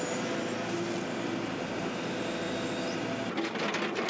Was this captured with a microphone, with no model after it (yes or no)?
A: yes